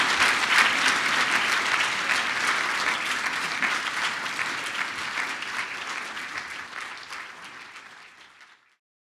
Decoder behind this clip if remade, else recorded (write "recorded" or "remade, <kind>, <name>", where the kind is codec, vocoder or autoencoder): remade, vocoder, BigVGAN v2